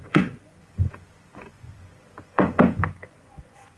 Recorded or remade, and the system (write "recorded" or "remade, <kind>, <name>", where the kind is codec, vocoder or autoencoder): remade, vocoder, Vocos